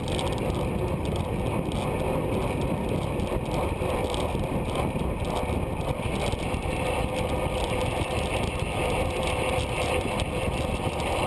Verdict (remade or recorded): recorded